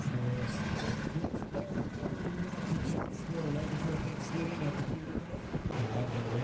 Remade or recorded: recorded